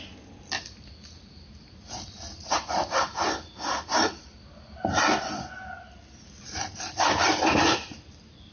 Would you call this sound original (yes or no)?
no